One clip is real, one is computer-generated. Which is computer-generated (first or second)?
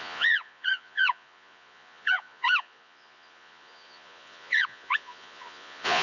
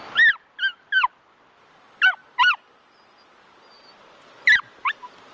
first